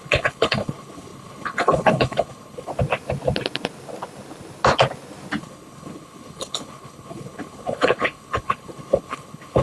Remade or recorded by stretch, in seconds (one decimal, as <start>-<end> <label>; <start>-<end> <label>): 0.0-2.7 remade; 2.7-5.4 recorded; 5.4-9.6 remade